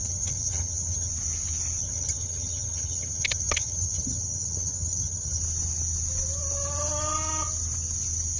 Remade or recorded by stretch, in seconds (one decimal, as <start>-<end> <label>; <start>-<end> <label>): 0.0-1.1 remade; 1.1-1.8 recorded; 1.8-5.4 remade; 5.4-8.4 recorded